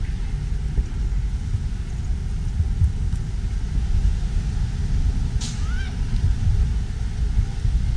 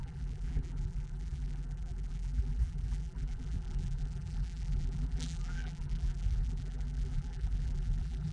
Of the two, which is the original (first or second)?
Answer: first